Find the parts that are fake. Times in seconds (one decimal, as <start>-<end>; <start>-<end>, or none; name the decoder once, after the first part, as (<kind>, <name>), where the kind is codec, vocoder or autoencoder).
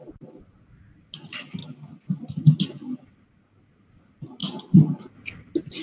none